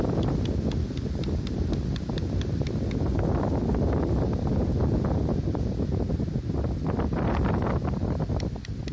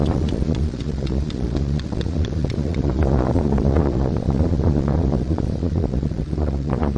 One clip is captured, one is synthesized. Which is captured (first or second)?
first